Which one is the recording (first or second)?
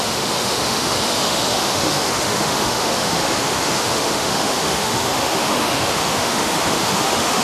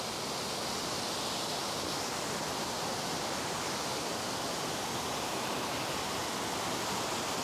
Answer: second